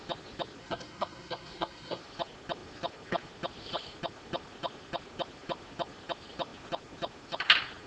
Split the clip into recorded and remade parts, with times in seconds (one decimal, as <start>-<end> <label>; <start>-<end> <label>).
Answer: 0.0-0.6 recorded; 0.6-2.0 remade; 2.0-7.9 recorded